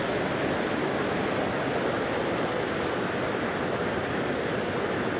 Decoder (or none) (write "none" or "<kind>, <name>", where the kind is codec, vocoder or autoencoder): none